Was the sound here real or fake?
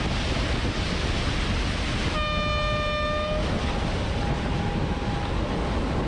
real